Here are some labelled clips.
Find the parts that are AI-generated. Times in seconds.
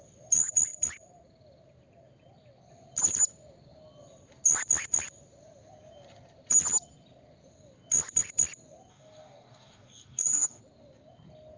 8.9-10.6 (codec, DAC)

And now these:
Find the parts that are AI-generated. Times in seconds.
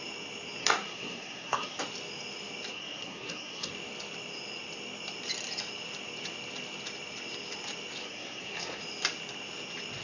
0.6-1.8 (codec, SNAC); 2.7-3.7; 8.0-8.8